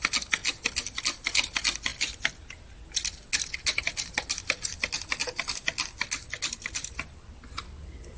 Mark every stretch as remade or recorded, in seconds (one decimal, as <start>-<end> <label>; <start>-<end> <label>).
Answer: 0.0-8.2 recorded